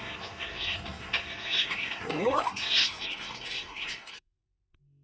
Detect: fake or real fake